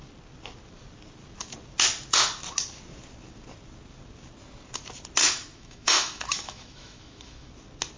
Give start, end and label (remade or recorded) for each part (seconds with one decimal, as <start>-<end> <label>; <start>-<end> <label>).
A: 0.0-5.2 recorded; 5.2-7.5 remade; 7.5-8.0 recorded